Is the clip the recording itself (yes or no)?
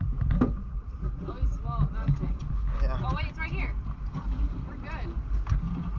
yes